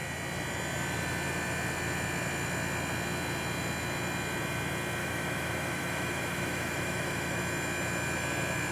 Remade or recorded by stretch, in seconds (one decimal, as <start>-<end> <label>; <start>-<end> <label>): 0.0-5.0 recorded; 5.0-7.4 remade; 7.4-8.7 recorded